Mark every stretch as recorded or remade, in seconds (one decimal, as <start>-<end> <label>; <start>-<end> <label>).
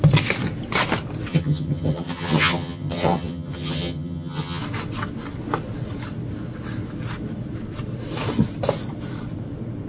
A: 0.0-1.3 recorded; 1.3-4.6 remade; 4.6-9.9 recorded